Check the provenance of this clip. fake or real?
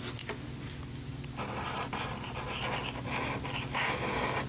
real